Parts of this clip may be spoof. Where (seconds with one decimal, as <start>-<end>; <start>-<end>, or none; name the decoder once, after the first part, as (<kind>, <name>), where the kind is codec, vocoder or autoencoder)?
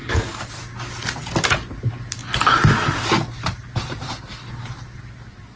0.0-0.5 (codec, DAC)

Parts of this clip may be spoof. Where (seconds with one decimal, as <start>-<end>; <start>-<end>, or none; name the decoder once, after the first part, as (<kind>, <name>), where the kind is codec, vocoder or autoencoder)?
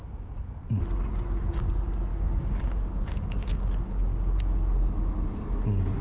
2.1-4.4 (codec, DAC)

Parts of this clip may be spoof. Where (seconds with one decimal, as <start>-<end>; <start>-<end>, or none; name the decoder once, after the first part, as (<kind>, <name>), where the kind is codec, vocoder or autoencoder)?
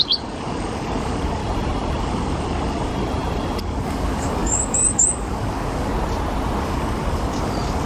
0.0-1.4 (codec, DAC); 2.0-2.9; 3.6-5.9; 6.6-7.9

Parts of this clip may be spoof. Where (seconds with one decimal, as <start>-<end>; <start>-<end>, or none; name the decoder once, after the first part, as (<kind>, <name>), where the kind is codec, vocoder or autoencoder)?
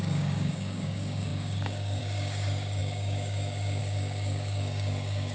0.0-5.3 (codec, DAC)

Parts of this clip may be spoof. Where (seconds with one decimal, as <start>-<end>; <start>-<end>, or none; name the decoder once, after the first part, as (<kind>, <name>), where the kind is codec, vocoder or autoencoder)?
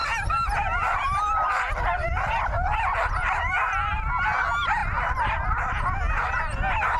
none